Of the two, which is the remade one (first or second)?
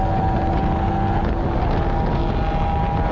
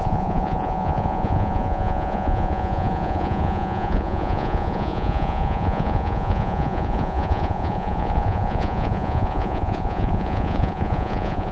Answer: second